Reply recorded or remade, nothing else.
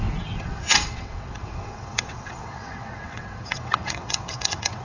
remade